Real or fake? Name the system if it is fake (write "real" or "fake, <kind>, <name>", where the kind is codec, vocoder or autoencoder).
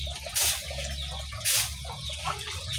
real